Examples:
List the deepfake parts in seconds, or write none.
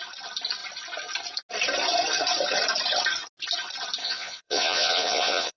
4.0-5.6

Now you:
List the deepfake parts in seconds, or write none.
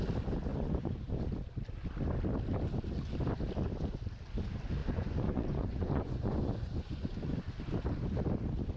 0.5-1.2; 4.8-7.4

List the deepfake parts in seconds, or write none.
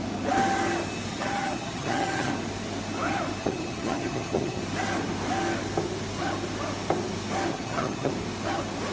1.1-2.3; 3.4-4.6; 7.5-8.1